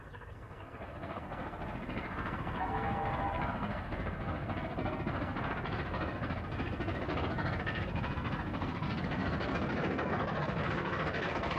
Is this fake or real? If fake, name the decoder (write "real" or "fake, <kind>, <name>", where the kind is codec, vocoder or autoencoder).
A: fake, codec, SNAC